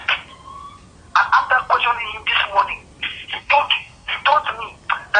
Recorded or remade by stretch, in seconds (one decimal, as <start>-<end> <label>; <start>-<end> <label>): 0.0-3.3 recorded; 3.3-4.2 remade; 4.2-5.2 recorded